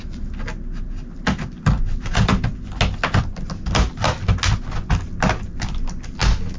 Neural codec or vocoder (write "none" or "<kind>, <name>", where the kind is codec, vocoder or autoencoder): none